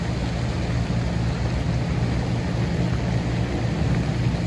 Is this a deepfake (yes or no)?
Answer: no